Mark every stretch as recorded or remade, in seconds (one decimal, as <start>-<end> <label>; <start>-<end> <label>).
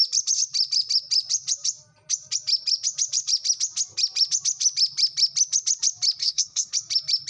0.0-6.2 recorded; 6.2-6.7 remade; 6.7-7.3 recorded